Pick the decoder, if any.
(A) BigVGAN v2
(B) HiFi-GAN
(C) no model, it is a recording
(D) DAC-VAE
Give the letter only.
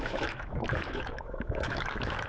D